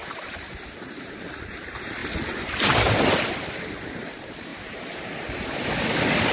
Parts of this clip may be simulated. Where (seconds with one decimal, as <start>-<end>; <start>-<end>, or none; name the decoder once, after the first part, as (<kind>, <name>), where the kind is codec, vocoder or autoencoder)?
0.0-1.2 (vocoder, BigVGAN v2); 4.5-5.7